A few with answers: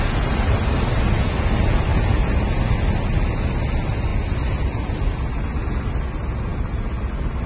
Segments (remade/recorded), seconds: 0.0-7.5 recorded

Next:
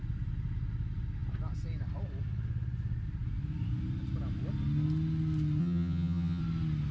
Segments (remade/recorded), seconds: 0.0-5.6 recorded; 5.6-6.4 remade; 6.4-6.9 recorded